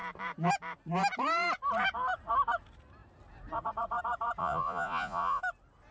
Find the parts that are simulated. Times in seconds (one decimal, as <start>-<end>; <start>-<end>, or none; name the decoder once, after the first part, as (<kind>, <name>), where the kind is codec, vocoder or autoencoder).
4.4-5.4 (vocoder, Vocos)